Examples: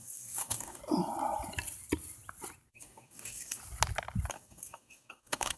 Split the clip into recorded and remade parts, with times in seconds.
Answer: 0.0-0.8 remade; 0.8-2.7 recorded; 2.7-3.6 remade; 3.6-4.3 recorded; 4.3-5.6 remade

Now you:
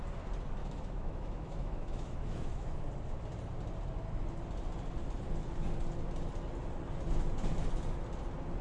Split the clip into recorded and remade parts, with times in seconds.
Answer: 0.0-0.6 recorded; 0.6-2.8 remade; 2.8-8.6 recorded

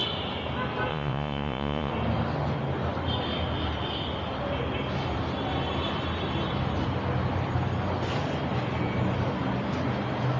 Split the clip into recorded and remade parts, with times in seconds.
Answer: 0.0-0.9 recorded; 0.9-1.9 remade; 1.9-10.4 recorded

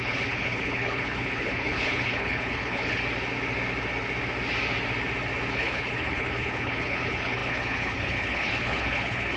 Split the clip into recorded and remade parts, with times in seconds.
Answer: 0.0-3.0 remade; 3.0-5.5 recorded; 5.5-9.4 remade